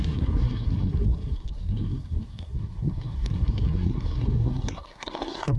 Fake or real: fake